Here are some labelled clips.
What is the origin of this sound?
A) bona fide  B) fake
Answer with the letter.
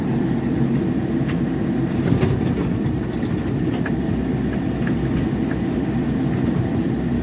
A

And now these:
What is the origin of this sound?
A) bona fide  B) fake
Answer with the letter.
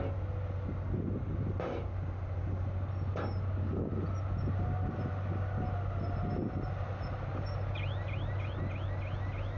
A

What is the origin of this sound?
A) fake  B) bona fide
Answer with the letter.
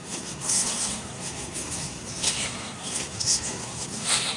A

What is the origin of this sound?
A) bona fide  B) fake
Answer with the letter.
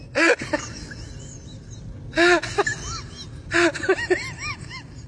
A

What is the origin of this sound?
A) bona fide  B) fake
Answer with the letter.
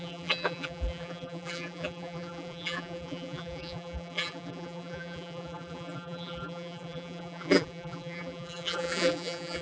B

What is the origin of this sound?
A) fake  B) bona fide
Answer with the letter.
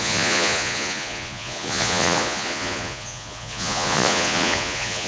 A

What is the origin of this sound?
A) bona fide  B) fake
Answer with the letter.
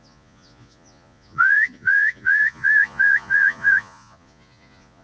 B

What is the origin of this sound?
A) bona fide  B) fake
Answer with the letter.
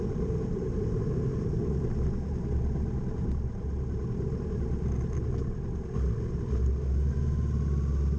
A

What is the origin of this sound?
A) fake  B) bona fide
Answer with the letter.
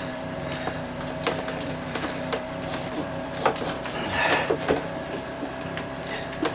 A